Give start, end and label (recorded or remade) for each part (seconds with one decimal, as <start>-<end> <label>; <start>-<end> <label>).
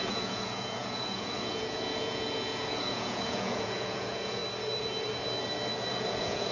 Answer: 0.0-4.4 remade; 4.4-5.9 recorded; 5.9-6.5 remade